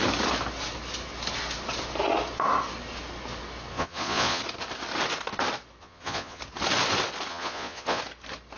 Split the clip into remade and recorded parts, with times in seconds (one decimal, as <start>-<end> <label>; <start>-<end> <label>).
0.0-3.7 recorded; 3.7-4.4 remade; 4.4-5.8 recorded; 5.8-6.4 remade; 6.4-7.3 recorded; 7.3-8.0 remade; 8.0-8.6 recorded